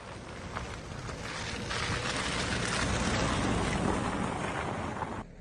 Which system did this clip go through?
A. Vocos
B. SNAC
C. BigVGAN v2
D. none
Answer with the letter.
D